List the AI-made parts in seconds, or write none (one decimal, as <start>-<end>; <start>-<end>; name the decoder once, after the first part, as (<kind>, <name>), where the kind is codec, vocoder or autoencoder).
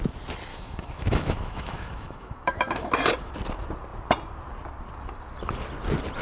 0.5-2.9 (autoencoder, DAC-VAE)